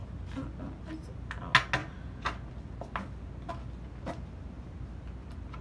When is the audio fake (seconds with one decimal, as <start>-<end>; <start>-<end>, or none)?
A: none